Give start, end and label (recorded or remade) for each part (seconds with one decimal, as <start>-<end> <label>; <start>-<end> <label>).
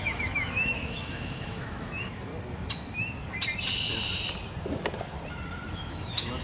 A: 0.0-2.3 remade; 2.3-5.7 recorded; 5.7-6.4 remade